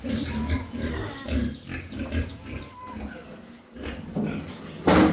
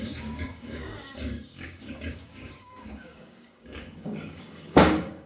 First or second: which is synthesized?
second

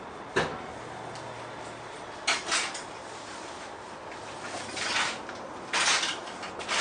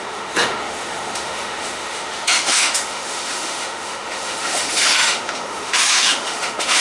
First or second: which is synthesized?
second